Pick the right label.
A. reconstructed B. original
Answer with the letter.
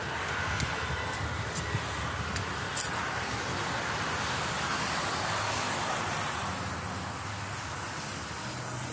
B